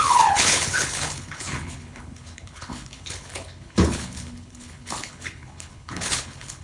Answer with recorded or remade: remade